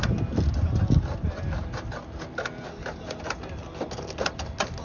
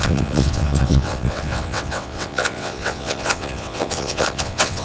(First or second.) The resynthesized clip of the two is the second